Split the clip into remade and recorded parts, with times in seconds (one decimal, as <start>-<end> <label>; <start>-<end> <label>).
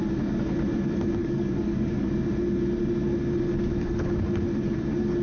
0.0-1.2 recorded; 1.2-2.1 remade; 2.1-3.7 recorded; 3.7-4.2 remade; 4.2-5.2 recorded